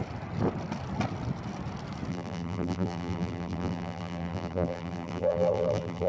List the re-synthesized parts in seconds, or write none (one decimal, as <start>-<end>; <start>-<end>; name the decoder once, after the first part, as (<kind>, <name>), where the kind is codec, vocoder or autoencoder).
2.1-6.1 (vocoder, BigVGAN v2)